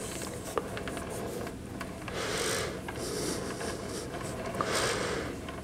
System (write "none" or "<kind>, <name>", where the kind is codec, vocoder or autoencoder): none